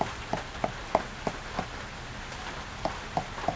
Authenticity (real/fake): real